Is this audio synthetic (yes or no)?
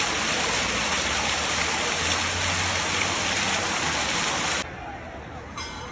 no